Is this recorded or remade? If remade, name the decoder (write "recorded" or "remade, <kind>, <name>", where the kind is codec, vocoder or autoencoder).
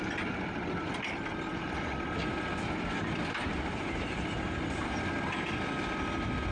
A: recorded